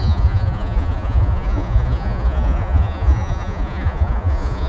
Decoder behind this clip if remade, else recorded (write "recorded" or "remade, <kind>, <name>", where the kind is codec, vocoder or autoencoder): remade, vocoder, Vocos